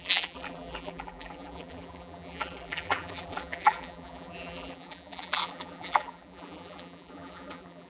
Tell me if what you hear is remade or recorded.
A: remade